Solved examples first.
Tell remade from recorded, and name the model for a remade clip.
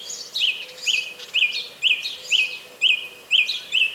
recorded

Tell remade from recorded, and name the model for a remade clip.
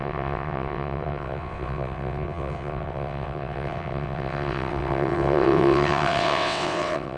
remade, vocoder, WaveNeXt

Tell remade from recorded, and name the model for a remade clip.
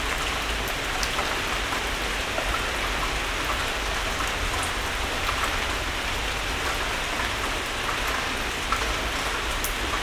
recorded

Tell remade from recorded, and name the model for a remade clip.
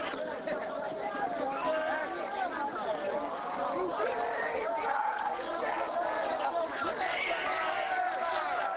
recorded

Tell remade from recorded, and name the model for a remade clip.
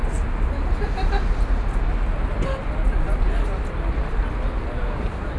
recorded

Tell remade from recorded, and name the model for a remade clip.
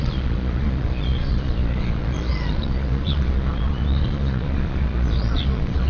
remade, vocoder, Vocos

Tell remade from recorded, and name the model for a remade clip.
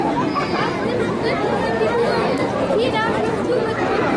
remade, vocoder, BigVGAN v2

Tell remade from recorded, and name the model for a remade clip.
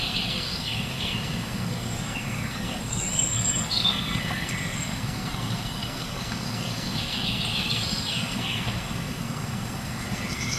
remade, codec, SNAC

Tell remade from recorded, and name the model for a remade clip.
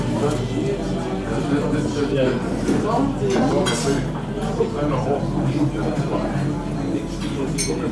recorded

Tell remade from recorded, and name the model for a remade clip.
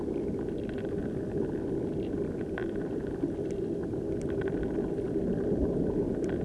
recorded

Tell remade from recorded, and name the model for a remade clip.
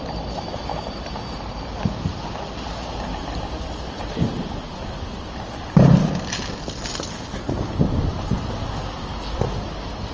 recorded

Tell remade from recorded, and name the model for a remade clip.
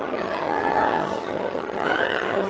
remade, vocoder, HiFi-GAN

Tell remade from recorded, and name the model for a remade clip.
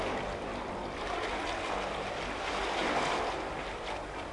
recorded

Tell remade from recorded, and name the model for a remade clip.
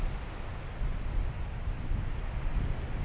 recorded